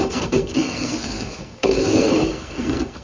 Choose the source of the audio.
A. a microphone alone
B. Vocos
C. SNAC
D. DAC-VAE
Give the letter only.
C